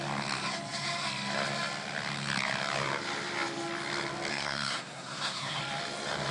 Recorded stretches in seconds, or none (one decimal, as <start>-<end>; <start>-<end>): 0.0-4.3; 5.6-6.3